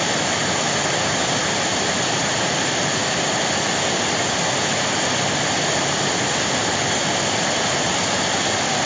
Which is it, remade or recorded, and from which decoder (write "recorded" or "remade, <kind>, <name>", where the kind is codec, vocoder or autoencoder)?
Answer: recorded